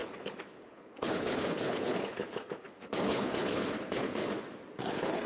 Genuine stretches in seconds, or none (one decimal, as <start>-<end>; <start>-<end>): 4.2-4.8